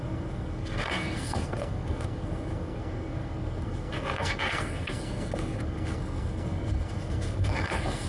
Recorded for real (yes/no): no